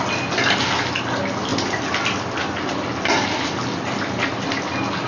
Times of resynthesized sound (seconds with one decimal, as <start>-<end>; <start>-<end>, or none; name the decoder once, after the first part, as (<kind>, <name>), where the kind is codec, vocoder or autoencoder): none